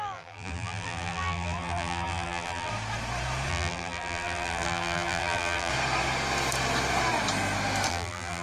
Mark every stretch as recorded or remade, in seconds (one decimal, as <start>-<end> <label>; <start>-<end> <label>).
0.0-2.7 remade; 2.7-3.5 recorded; 3.5-5.7 remade; 5.7-7.9 recorded; 7.9-8.4 remade